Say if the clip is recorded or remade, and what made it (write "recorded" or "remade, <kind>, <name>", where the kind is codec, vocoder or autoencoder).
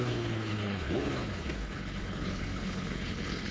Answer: remade, codec, HILCodec